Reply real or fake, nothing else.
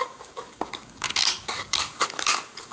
fake